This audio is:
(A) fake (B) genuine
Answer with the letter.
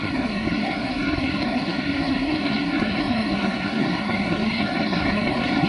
A